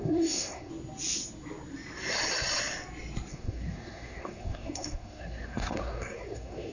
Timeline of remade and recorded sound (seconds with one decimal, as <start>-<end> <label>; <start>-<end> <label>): 0.0-0.7 remade; 0.7-3.3 recorded; 3.3-6.7 remade